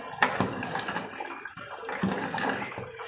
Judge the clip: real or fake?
real